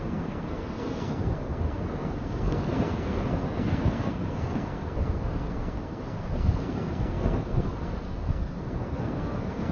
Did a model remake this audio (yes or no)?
yes